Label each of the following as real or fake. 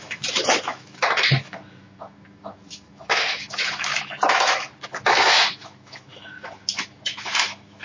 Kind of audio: fake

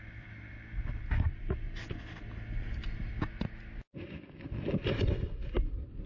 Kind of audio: real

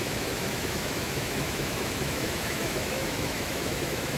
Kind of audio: fake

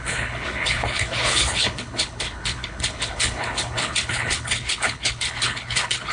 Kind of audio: fake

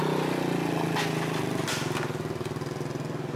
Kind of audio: real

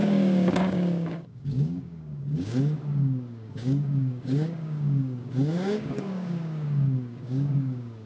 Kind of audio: fake